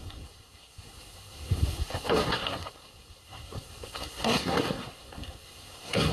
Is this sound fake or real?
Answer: fake